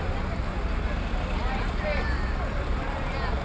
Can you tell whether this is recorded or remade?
recorded